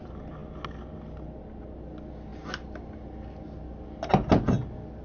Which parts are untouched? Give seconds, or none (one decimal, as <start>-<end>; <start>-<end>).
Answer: 0.0-5.0